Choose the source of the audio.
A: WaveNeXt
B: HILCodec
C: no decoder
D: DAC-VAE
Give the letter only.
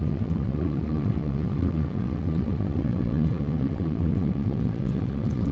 A